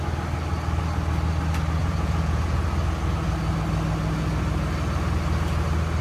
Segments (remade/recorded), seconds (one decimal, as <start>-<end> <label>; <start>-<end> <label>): 0.0-1.8 recorded; 1.8-2.6 remade; 2.6-6.0 recorded